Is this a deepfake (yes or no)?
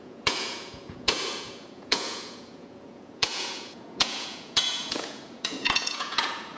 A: yes